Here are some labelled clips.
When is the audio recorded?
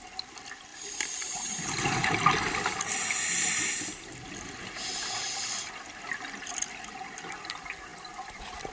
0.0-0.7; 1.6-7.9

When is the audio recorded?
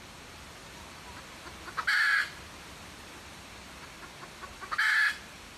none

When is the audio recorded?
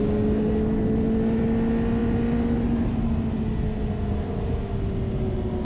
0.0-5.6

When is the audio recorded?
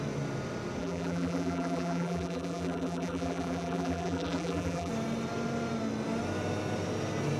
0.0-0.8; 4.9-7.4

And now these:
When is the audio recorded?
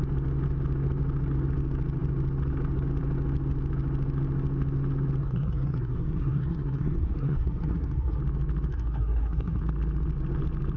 0.0-5.2; 8.2-8.7; 9.6-10.8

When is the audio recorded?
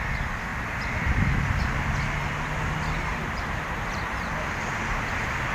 0.0-3.1; 4.3-5.5